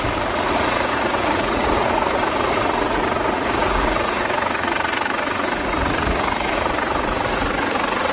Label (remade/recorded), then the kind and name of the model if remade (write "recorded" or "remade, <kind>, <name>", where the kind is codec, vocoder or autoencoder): remade, vocoder, Vocos